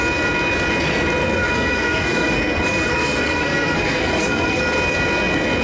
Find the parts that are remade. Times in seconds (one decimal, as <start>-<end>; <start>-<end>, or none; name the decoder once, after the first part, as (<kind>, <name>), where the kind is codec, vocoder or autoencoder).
1.2-4.6 (codec, SNAC)